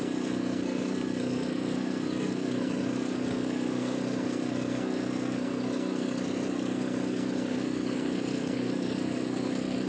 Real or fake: fake